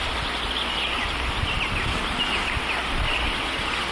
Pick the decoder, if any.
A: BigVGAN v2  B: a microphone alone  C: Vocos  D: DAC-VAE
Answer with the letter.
B